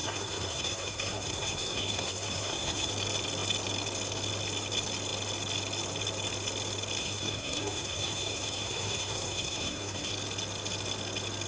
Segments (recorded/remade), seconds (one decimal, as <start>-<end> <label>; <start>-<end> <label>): 0.0-2.9 remade; 2.9-7.0 recorded; 7.0-10.1 remade; 10.1-11.5 recorded